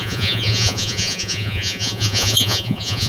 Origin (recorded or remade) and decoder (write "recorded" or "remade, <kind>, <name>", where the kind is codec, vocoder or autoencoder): remade, vocoder, Vocos